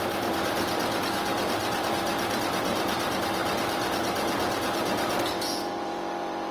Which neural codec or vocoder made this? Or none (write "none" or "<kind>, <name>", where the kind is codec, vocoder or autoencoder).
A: vocoder, BigVGAN v2